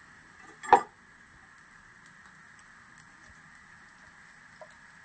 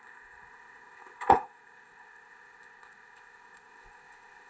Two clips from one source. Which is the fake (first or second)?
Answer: second